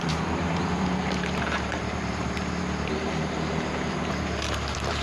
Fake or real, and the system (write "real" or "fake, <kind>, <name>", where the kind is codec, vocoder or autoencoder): fake, vocoder, BigVGAN v2